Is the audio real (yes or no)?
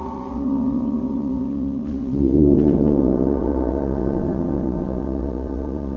no